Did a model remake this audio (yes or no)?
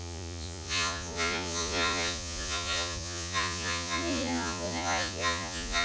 yes